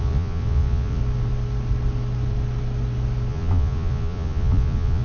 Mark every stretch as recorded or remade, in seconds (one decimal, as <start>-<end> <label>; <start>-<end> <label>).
0.0-1.0 remade; 1.0-3.3 recorded; 3.3-5.0 remade